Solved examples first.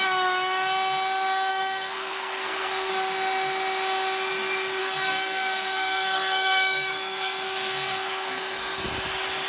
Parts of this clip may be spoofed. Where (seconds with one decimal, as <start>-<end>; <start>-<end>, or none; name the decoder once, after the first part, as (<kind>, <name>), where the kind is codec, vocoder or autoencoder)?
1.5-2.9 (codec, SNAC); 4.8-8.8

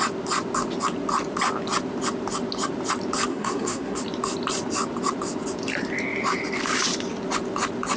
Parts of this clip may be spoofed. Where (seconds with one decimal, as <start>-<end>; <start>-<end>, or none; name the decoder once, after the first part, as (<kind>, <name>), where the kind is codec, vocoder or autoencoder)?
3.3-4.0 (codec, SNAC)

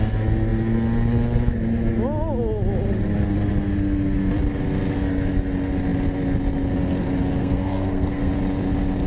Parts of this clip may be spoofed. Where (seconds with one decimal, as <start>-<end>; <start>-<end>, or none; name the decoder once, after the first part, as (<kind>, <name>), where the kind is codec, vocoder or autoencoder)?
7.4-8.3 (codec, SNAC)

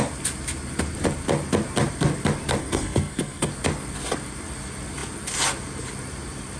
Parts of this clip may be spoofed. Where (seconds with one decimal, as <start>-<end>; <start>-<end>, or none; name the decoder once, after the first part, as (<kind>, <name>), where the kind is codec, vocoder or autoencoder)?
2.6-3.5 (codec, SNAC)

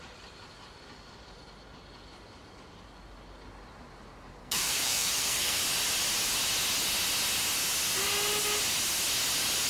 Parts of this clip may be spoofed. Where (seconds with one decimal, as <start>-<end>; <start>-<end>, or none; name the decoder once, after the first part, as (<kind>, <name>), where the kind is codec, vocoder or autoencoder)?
4.4-5.6 (codec, SNAC)

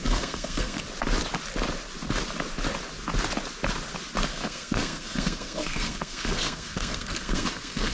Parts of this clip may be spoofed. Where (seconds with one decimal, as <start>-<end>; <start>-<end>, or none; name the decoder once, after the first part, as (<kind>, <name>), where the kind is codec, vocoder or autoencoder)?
0.0-0.8 (codec, SNAC); 4.3-7.9